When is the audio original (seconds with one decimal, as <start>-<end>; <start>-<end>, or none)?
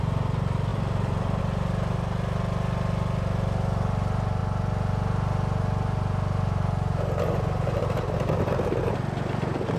0.0-0.7; 1.4-9.8